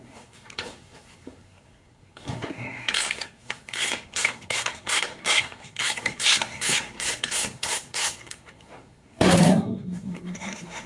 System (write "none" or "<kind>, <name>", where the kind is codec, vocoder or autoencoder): codec, SNAC